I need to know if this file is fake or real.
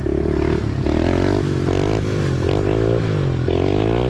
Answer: real